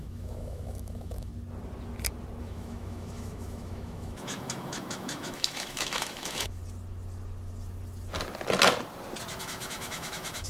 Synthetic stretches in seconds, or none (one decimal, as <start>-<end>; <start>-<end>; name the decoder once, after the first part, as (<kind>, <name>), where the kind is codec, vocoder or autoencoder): 0.0-1.3 (autoencoder, DAC-VAE); 2.4-6.6; 9.4-10.5